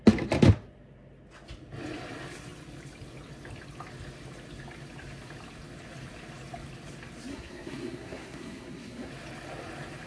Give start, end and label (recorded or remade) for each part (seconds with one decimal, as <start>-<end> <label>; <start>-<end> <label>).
0.0-7.3 recorded; 7.3-9.1 remade; 9.1-10.1 recorded